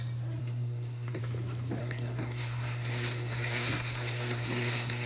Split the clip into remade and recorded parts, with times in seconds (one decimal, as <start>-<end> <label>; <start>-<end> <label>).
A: 0.0-0.4 recorded; 0.4-1.2 remade; 1.2-1.8 recorded; 1.8-5.1 remade